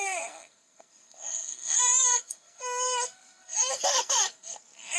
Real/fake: fake